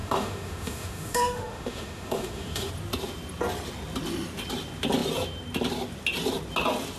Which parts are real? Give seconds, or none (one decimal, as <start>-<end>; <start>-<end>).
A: 2.7-7.0